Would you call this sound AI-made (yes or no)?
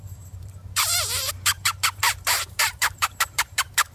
yes